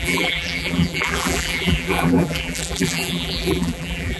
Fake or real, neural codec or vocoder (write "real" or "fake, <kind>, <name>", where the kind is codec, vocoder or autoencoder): fake, vocoder, BigVGAN v2